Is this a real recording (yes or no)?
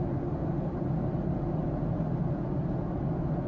yes